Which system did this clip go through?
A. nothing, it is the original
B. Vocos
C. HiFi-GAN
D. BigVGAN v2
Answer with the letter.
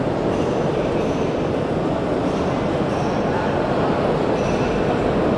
A